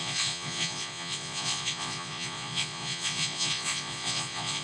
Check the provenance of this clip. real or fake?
fake